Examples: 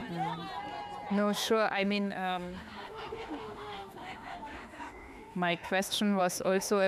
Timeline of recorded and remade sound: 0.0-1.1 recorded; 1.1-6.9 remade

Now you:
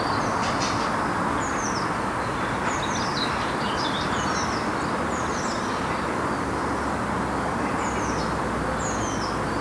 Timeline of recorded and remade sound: 0.0-9.6 recorded

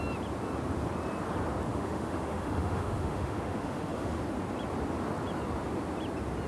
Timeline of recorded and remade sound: 0.0-1.7 recorded; 1.7-4.2 remade; 4.2-6.5 recorded

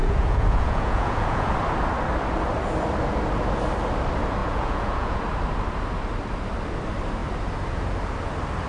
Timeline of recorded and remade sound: 0.0-1.5 remade; 1.5-4.4 recorded; 4.4-5.2 remade; 5.2-8.7 recorded

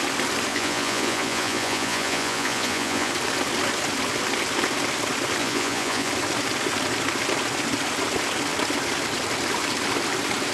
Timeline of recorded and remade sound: 0.0-0.5 recorded; 0.5-3.1 remade; 3.1-5.4 recorded; 5.4-6.1 remade; 6.1-10.5 recorded

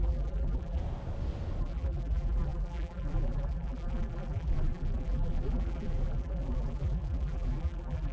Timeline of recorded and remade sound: 0.0-0.8 remade; 0.8-1.6 recorded; 1.6-8.1 remade

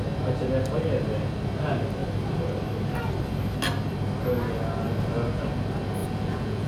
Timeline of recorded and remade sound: 0.0-6.0 recorded; 6.0-6.7 remade

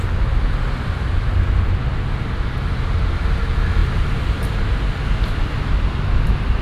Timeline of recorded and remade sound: 0.0-3.8 recorded; 3.8-4.5 remade; 4.5-6.6 recorded